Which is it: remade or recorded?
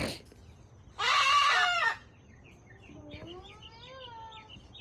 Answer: recorded